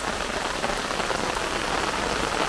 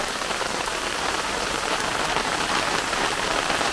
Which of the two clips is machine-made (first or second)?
second